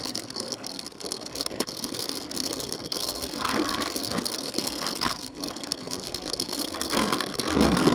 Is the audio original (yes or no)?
no